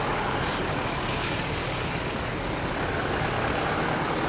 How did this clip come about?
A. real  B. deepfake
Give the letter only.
B